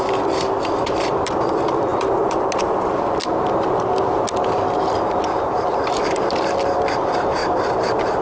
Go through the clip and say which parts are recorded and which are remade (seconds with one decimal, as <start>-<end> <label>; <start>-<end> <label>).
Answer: 0.0-1.9 remade; 1.9-4.5 recorded; 4.5-8.2 remade